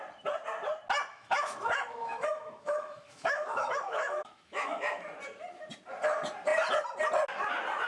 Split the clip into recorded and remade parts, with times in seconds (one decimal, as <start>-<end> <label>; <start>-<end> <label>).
0.0-1.1 recorded; 1.1-5.0 remade; 5.0-7.9 recorded